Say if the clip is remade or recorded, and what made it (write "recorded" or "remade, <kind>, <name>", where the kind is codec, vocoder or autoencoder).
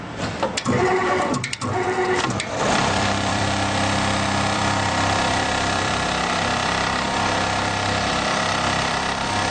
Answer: remade, vocoder, BigVGAN v2